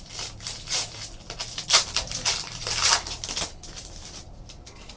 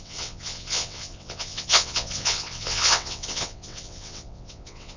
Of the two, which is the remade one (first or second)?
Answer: second